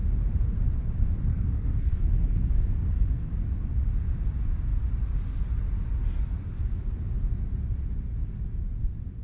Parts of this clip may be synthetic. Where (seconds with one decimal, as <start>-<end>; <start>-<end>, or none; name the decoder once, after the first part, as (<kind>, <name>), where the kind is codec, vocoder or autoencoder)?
1.3-3.3 (codec, SNAC)